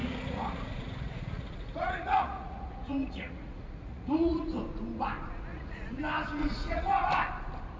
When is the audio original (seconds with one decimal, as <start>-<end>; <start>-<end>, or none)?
4.6-5.5; 6.0-6.4; 6.9-7.8